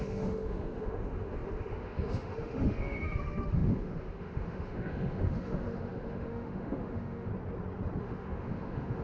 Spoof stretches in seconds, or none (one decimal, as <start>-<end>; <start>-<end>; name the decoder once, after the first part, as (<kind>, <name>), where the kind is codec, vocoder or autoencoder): 0.0-7.3 (autoencoder, DAC-VAE); 8.0-9.0